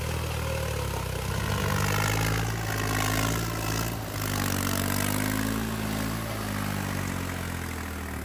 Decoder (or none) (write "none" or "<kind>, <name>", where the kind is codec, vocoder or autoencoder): none